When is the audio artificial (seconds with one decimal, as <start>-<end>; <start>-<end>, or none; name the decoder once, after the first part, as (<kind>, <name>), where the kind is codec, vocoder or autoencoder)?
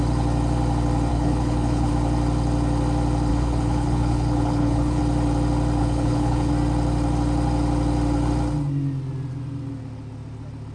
1.1-1.9 (codec, HILCodec); 3.3-5.0; 5.8-6.5